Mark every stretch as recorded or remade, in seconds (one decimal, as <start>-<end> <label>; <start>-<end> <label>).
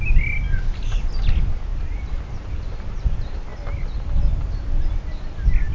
0.0-1.7 recorded; 1.7-3.1 remade; 3.1-5.7 recorded